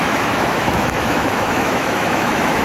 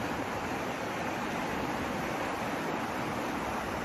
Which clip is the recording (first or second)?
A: second